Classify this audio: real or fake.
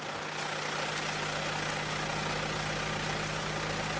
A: real